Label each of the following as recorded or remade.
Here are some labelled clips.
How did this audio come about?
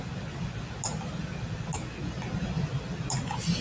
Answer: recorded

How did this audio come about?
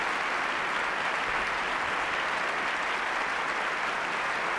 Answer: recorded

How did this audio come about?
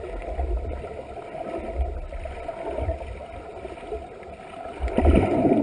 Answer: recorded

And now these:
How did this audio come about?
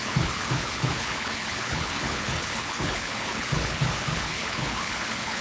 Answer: remade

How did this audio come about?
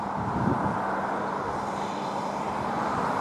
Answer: remade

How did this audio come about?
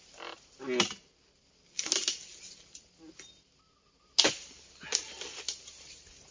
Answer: recorded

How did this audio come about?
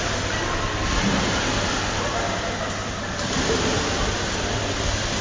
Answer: recorded